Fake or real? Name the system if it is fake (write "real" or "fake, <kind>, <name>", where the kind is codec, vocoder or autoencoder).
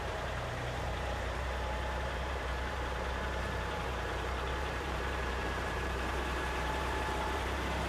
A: fake, vocoder, BigVGAN v2